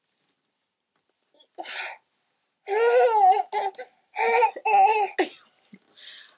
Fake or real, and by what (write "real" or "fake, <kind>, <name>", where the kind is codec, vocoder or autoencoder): real